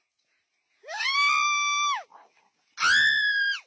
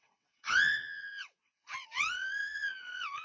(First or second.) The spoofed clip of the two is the second